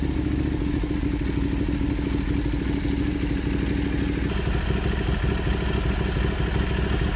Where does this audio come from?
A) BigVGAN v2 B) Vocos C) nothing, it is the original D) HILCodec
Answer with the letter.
C